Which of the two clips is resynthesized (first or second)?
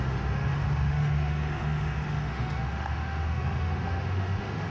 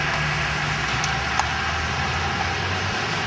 first